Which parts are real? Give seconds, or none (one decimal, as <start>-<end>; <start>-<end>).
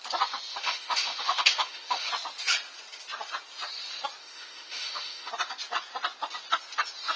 0.0-0.5; 2.1-4.2; 5.3-7.2